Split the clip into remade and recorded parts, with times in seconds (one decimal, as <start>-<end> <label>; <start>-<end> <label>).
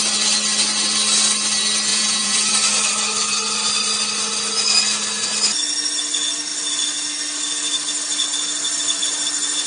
0.0-1.9 recorded; 1.9-2.5 remade; 2.5-9.7 recorded